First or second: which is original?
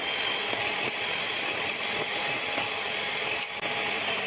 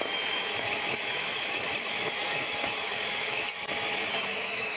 first